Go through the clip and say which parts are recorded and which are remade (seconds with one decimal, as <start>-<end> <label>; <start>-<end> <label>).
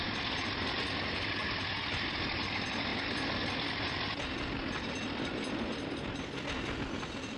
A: 0.0-7.4 recorded